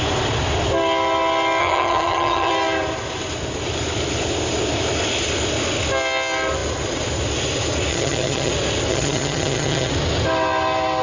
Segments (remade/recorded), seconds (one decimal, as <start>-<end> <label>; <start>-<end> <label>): 0.0-1.6 recorded; 1.6-2.5 remade; 2.5-7.9 recorded; 7.9-8.5 remade; 8.5-8.9 recorded; 8.9-9.9 remade; 9.9-11.0 recorded